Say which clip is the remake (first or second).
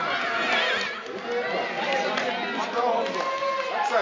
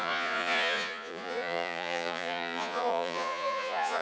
second